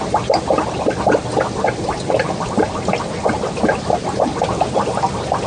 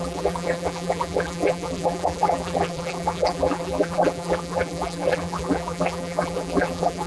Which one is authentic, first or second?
first